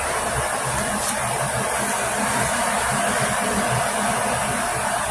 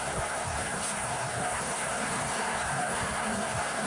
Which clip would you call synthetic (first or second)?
second